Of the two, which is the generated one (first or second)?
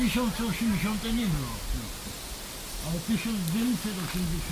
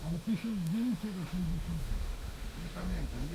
second